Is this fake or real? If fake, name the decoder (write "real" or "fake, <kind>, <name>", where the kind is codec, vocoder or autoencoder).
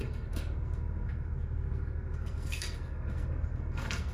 fake, codec, SNAC